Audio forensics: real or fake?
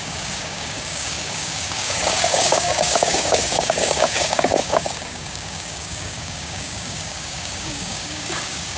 fake